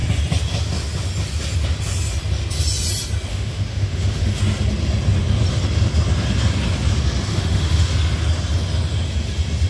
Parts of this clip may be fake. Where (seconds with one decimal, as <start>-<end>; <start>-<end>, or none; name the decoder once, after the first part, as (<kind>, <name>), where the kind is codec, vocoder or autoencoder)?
3.3-4.4 (autoencoder, DAC-VAE); 7.3-7.9